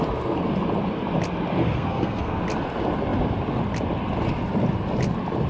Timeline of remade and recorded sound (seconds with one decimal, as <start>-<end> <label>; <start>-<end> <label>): 0.0-1.6 recorded; 1.6-2.4 remade; 2.4-5.5 recorded